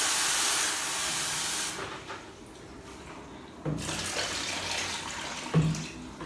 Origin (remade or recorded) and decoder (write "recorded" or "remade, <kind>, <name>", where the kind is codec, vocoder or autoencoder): recorded